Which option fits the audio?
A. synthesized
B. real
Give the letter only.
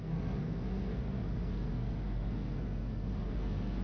A